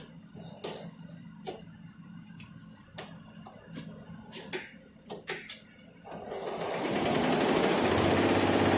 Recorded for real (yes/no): yes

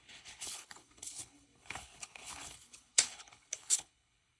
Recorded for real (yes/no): no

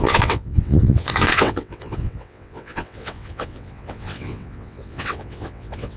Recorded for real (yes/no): no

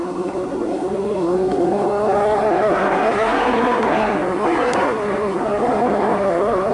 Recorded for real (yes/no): no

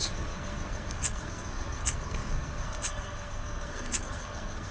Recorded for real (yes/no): no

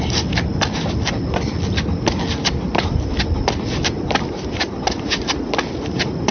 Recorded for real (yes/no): yes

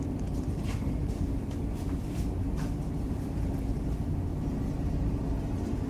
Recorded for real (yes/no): yes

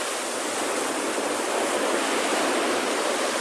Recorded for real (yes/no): yes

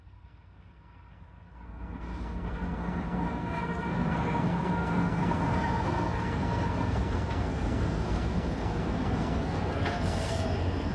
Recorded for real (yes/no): no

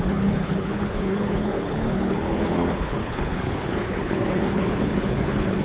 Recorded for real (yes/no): no